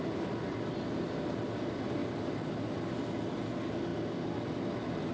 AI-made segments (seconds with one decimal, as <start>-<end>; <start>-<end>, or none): none